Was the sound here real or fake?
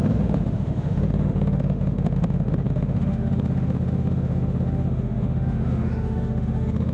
fake